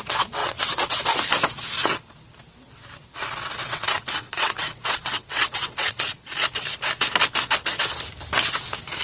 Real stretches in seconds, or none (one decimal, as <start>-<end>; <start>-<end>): 0.0-0.4; 0.9-3.6; 6.3-9.0